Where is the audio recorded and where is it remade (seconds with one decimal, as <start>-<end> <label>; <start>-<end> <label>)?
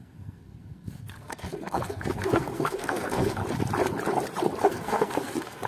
0.0-3.4 remade; 3.4-4.6 recorded; 4.6-5.7 remade